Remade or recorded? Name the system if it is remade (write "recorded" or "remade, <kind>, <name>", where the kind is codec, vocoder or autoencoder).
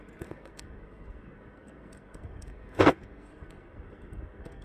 remade, codec, SNAC